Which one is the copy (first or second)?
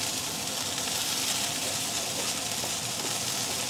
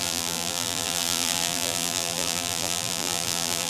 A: second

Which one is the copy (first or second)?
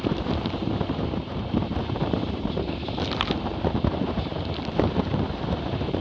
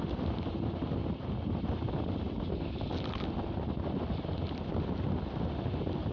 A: first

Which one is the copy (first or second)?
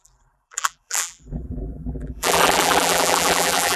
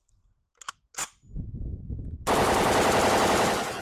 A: first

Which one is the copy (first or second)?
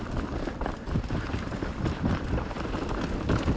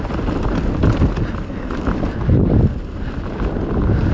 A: first